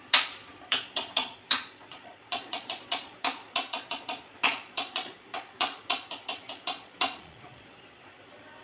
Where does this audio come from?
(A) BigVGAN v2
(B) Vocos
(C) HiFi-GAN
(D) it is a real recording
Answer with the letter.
B